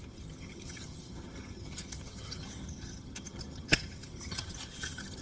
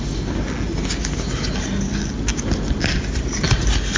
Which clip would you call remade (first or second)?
first